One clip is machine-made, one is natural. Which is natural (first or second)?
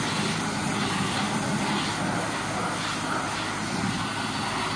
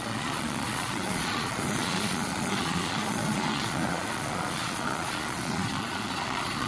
first